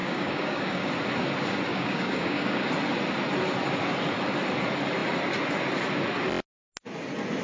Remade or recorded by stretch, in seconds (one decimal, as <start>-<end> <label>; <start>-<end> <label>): 0.0-0.9 remade; 0.9-1.7 recorded; 1.7-2.7 remade; 2.7-7.4 recorded